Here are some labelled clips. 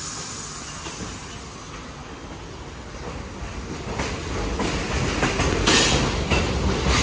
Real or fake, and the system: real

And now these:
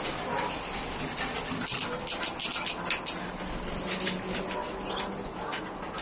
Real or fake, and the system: real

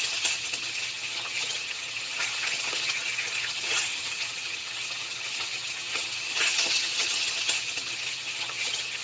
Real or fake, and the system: fake, vocoder, HiFi-GAN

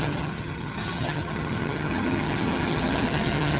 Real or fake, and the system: fake, vocoder, HiFi-GAN